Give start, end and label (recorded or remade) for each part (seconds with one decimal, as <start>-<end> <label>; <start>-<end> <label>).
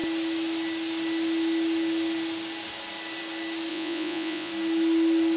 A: 0.0-3.7 recorded; 3.7-4.5 remade; 4.5-5.4 recorded